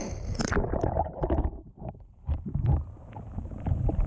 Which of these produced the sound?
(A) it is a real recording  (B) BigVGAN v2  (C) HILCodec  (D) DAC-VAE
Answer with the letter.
B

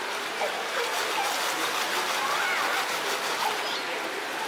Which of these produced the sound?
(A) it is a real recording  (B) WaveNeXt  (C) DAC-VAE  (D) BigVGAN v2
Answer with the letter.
A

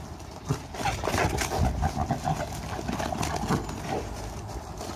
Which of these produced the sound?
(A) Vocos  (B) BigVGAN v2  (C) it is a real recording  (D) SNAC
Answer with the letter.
C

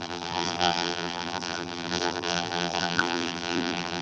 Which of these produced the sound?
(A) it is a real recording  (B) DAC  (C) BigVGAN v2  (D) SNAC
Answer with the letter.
C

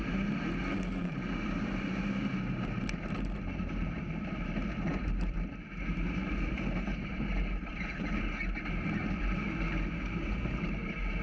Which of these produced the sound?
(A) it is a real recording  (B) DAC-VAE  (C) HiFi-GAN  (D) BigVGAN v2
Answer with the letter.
D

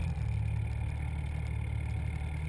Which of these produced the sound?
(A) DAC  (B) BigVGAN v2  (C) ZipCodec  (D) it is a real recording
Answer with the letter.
D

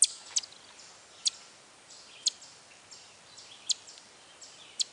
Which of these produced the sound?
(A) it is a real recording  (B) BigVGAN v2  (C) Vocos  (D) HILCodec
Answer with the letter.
A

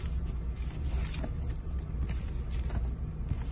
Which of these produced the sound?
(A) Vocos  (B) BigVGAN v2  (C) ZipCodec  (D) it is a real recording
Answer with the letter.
D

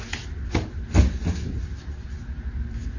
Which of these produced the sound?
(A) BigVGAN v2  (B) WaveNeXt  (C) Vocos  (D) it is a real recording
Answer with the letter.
D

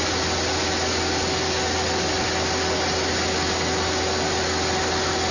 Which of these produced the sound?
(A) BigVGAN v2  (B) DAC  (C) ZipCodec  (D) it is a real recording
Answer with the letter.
D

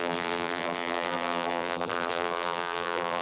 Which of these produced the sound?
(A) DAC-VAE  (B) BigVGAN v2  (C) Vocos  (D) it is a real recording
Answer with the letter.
B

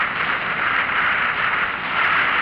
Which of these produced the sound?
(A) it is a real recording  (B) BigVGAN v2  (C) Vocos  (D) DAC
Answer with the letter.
B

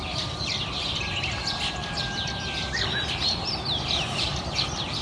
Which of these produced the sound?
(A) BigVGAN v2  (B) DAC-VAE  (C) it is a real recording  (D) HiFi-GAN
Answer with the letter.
A